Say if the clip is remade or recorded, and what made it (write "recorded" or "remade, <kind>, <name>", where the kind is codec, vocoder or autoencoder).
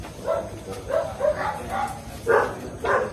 recorded